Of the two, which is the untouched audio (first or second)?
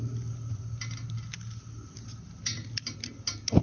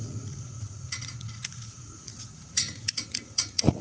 first